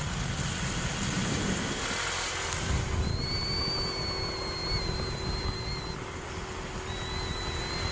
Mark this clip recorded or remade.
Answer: recorded